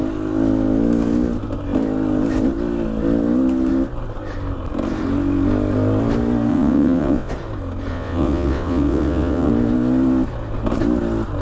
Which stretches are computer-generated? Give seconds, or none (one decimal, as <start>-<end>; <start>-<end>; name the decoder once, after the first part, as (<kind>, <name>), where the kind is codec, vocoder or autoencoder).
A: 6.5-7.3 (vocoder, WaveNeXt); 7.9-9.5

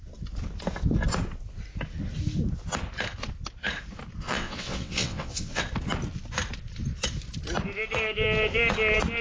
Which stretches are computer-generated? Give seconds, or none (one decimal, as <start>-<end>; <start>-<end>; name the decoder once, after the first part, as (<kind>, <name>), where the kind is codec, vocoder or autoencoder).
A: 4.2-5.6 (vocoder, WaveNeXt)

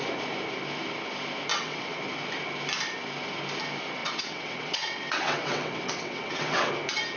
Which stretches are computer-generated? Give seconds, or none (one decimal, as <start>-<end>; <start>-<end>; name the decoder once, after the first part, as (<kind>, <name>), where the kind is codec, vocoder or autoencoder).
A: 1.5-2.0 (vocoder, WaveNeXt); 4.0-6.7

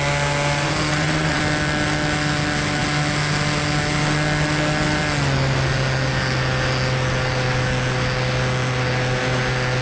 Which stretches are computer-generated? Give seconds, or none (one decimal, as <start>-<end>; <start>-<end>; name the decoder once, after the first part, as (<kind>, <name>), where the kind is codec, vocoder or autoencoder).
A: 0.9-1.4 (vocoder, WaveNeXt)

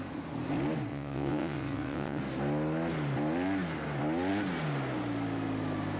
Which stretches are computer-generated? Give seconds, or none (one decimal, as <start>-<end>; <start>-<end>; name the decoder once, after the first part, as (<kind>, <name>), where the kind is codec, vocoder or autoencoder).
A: 0.9-2.2 (vocoder, WaveNeXt)

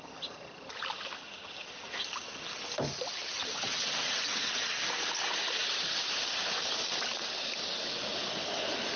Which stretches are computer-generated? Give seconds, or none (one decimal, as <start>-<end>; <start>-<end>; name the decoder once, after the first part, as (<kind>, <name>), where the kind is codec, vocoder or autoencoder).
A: 3.4-4.8 (vocoder, WaveNeXt)

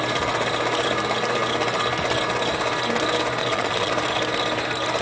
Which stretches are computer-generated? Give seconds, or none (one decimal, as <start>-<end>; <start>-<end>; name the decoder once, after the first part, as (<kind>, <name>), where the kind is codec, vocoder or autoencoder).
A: 3.4-3.9 (vocoder, WaveNeXt)

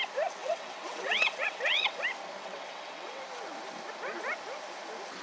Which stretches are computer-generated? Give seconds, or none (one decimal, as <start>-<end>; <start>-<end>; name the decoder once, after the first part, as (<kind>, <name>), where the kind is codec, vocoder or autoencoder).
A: 0.4-2.0 (vocoder, WaveNeXt); 2.4-3.2